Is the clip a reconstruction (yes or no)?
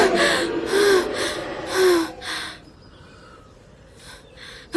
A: no